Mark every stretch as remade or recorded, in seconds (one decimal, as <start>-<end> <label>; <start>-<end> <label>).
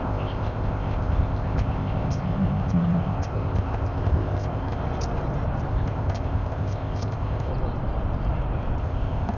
0.0-4.8 remade; 4.8-5.7 recorded; 5.7-7.5 remade; 7.5-8.8 recorded; 8.8-9.4 remade